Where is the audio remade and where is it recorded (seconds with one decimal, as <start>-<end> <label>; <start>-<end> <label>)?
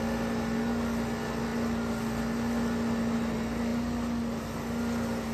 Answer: 0.0-5.3 recorded